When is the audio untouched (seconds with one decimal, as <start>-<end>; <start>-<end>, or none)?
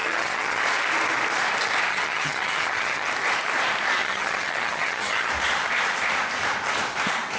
0.6-1.9; 3.1-4.0; 5.3-7.4